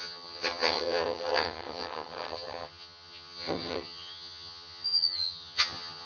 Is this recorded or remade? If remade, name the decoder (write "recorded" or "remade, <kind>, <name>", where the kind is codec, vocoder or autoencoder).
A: remade, vocoder, HiFi-GAN